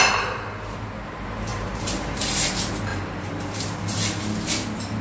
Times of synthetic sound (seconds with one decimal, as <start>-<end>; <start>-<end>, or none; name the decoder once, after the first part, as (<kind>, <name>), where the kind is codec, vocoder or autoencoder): 1.5-2.5 (vocoder, BigVGAN v2); 2.9-4.2